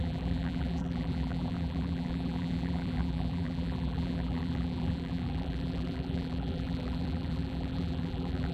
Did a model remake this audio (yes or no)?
yes